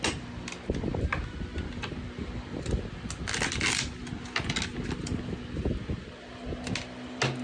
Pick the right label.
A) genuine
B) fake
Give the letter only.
A